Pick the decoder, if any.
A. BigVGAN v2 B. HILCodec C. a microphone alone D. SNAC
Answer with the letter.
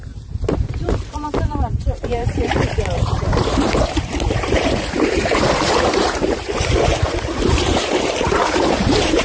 A